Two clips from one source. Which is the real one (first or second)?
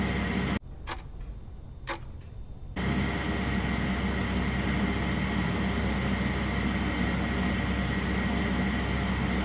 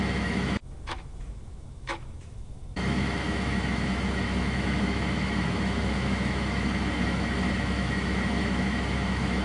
first